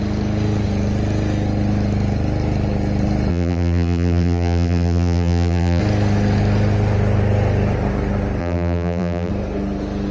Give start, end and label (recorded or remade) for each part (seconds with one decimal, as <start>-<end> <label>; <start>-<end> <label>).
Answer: 0.0-3.3 recorded; 3.3-5.8 remade; 5.8-8.4 recorded; 8.4-9.3 remade; 9.3-10.1 recorded